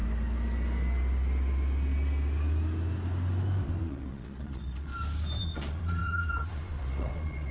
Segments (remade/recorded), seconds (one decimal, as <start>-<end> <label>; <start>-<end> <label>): 0.0-3.8 recorded; 3.8-4.9 remade; 4.9-5.4 recorded; 5.4-7.5 remade